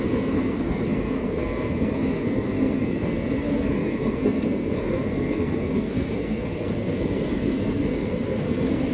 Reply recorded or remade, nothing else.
remade